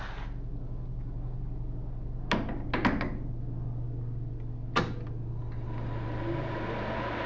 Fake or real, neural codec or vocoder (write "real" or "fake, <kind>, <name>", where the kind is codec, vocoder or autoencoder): real